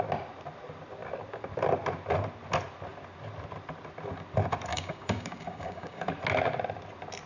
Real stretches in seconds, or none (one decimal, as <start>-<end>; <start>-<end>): 0.0-4.7; 6.0-7.3